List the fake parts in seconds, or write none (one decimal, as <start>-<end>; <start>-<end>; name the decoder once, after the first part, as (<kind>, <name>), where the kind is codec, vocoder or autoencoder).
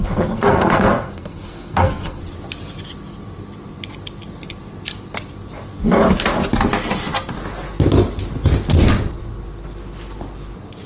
0.0-2.2 (codec, SNAC)